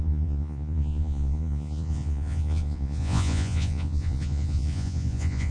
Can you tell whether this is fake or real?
fake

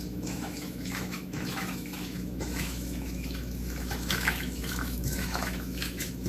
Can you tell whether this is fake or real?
fake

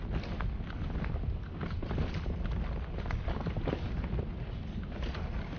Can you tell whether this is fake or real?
real